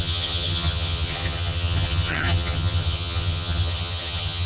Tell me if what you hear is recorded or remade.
remade